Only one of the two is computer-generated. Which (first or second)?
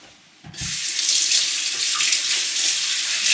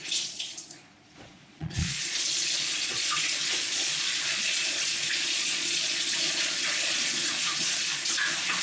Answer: second